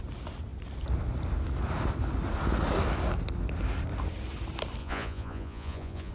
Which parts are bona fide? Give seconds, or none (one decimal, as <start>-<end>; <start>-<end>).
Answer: 0.0-4.8

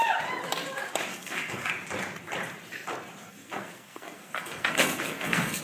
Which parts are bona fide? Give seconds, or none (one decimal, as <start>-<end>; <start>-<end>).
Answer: 0.0-1.1; 1.7-3.2

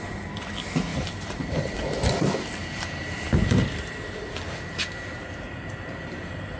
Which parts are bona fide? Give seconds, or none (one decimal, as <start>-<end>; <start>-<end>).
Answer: 0.0-0.9; 1.9-2.6

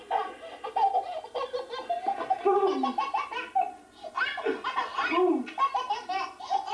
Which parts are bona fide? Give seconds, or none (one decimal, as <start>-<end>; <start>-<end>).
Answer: 0.0-4.9; 5.4-6.7

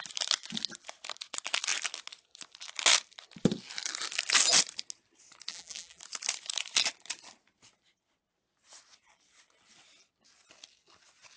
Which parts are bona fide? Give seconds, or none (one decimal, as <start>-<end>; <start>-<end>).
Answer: 0.0-5.5; 6.0-11.4

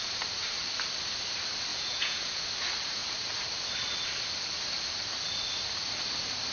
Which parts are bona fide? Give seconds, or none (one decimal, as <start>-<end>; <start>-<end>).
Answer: 0.0-1.7; 2.4-6.5

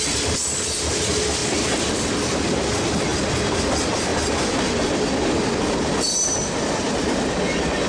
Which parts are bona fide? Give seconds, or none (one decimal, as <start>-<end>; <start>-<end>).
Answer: 0.0-7.9

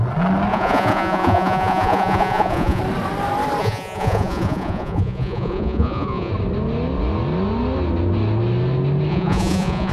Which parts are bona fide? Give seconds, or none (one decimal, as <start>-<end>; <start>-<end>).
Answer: 0.0-0.5; 2.8-3.6; 6.3-9.1